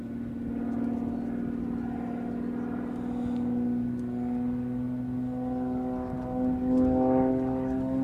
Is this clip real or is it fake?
real